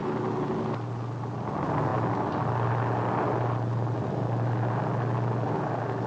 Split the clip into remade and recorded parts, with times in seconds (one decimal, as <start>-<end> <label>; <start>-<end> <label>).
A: 0.0-6.1 recorded